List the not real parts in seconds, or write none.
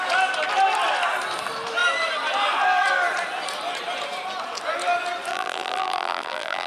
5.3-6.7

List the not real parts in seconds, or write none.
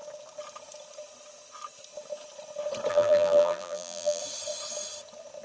2.9-4.2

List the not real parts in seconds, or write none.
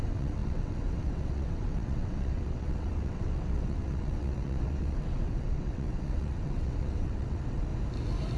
0.0-7.7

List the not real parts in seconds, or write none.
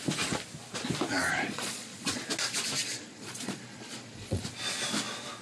1.3-2.2; 2.8-4.4